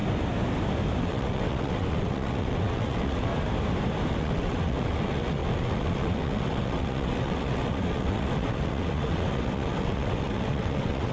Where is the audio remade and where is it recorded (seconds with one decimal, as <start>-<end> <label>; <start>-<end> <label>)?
0.0-1.0 recorded; 1.0-3.3 remade; 3.3-4.1 recorded; 4.1-11.1 remade